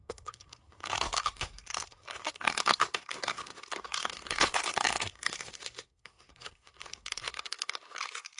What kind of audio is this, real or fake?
fake